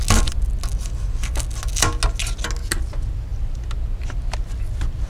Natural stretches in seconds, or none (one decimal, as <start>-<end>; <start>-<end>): 0.0-5.1